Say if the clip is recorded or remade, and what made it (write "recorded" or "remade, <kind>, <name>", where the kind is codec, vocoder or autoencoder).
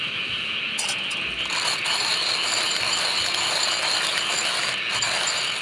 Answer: recorded